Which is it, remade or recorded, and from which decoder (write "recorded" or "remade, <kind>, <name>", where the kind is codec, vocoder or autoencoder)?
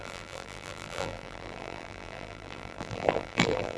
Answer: remade, vocoder, BigVGAN v2